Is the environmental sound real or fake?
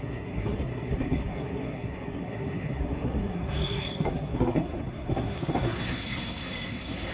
fake